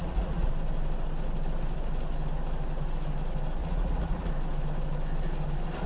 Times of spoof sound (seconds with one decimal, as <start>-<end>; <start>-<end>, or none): 0.0-0.5; 3.6-4.3